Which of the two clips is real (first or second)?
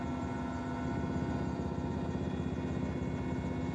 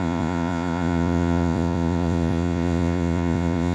first